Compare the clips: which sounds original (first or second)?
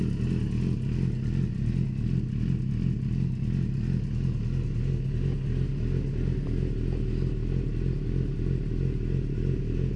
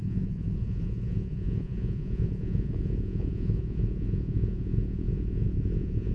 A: first